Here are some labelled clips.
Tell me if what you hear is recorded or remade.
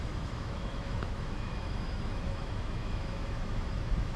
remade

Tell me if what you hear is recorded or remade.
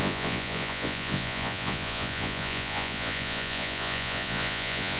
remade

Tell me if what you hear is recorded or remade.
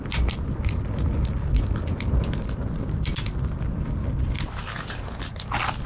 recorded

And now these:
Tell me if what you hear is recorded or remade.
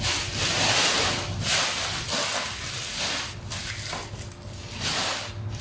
recorded